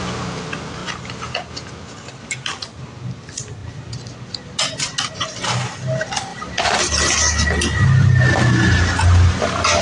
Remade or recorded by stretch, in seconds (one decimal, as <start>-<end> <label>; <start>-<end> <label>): 0.0-9.8 recorded